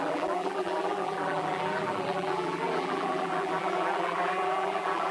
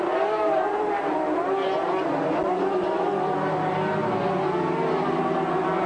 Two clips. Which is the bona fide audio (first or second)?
second